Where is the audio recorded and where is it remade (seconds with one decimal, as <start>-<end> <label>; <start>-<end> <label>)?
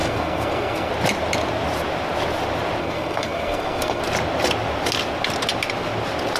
0.0-0.9 remade; 0.9-2.8 recorded; 2.8-4.0 remade; 4.0-6.4 recorded